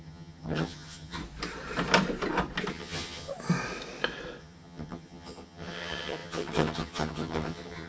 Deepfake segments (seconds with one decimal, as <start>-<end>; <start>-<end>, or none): 0.0-1.2; 2.7-3.3; 4.4-7.9

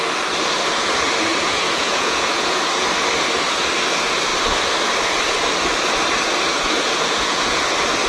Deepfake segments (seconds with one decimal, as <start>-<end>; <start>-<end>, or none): 1.3-2.7; 6.5-7.6